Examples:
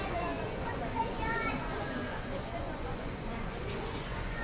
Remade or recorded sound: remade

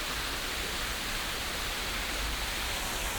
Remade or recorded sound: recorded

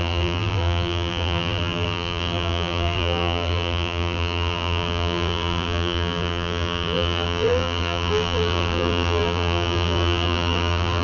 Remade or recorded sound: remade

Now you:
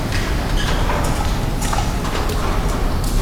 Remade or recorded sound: recorded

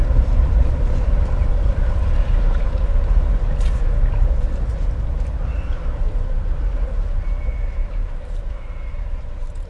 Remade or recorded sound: remade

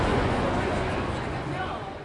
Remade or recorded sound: remade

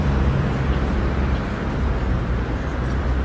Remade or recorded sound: remade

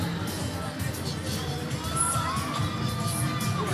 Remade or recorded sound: recorded